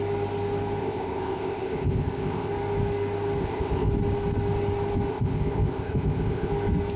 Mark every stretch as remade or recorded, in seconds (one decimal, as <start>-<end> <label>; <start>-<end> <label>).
0.0-0.8 recorded; 0.8-2.5 remade; 2.5-3.4 recorded; 3.4-3.9 remade; 3.9-5.1 recorded; 5.1-6.5 remade; 6.5-7.0 recorded

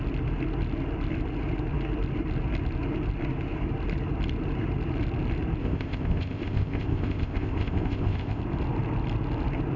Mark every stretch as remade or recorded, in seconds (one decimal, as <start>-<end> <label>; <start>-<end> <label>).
0.0-5.6 recorded; 5.6-8.4 remade; 8.4-9.8 recorded

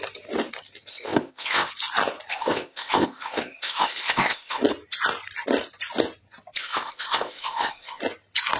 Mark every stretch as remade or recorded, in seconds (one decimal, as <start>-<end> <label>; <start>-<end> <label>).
0.0-0.9 recorded; 0.9-1.7 remade; 1.7-2.3 recorded; 2.3-4.6 remade; 4.6-6.6 recorded; 6.6-8.0 remade; 8.0-8.6 recorded

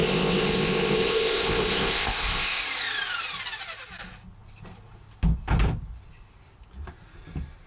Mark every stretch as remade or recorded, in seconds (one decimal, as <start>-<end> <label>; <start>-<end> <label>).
0.0-2.6 remade; 2.6-7.7 recorded

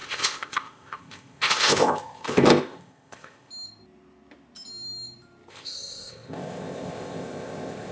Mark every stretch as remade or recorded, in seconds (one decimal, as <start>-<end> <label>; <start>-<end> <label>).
0.0-3.5 remade; 3.5-5.5 recorded; 5.5-7.9 remade

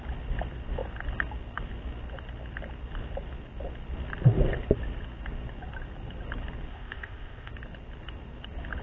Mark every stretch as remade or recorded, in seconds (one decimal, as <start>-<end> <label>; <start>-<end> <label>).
0.0-6.7 recorded; 6.7-7.5 remade; 7.5-8.8 recorded

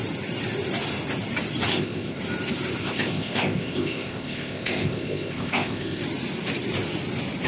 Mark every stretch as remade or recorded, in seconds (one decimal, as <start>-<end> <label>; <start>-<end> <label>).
0.0-1.7 recorded; 1.7-2.2 remade; 2.2-2.8 recorded; 2.8-6.0 remade; 6.0-7.5 recorded

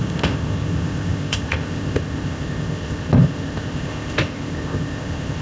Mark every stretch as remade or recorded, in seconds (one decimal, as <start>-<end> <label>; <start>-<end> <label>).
0.0-5.4 remade